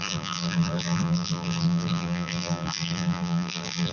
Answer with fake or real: fake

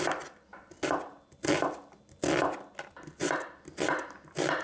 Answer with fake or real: real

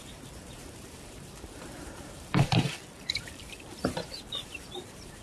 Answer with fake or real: fake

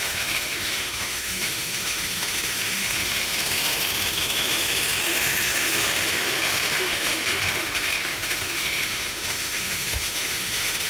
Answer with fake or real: fake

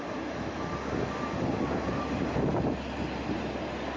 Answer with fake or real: real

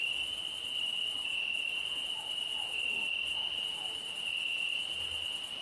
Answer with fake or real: real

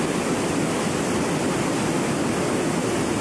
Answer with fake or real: real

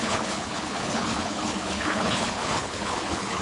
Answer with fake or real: fake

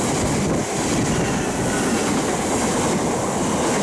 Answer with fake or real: real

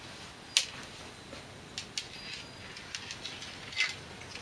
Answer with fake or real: real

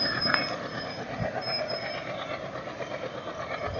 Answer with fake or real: real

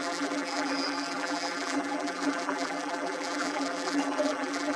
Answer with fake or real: fake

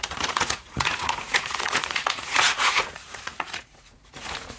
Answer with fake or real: fake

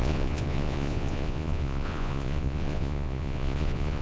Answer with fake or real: fake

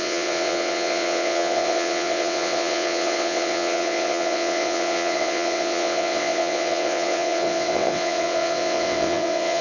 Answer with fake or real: fake